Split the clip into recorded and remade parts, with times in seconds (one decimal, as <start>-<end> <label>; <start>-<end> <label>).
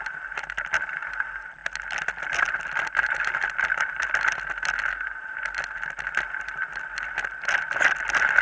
0.0-8.4 recorded